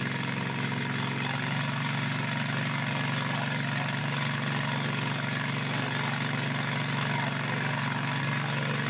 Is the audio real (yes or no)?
yes